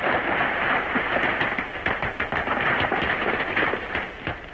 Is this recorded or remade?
recorded